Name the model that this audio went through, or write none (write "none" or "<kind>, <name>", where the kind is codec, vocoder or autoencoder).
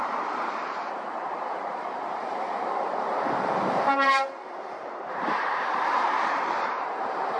vocoder, BigVGAN v2